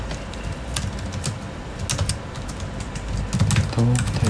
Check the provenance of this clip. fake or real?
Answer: real